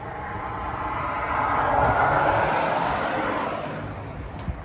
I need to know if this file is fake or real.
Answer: real